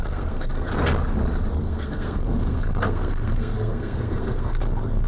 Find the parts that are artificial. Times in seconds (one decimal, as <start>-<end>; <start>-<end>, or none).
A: 0.0-0.7; 1.5-5.1